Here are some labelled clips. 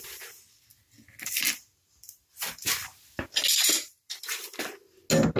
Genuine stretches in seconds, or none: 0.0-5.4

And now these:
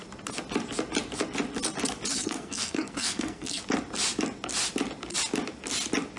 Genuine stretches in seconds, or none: 0.0-2.1; 3.6-6.2